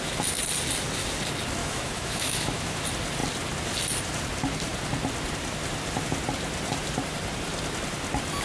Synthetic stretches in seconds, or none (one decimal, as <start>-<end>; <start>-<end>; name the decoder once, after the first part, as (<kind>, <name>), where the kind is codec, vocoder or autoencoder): 1.6-2.8 (autoencoder, DAC-VAE)